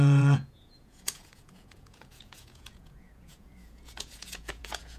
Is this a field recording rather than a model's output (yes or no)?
no